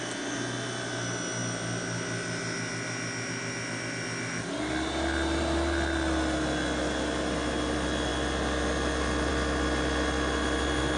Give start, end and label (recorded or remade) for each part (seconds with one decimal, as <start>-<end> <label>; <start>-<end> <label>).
0.0-11.0 recorded